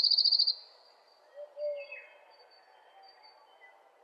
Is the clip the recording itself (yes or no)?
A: yes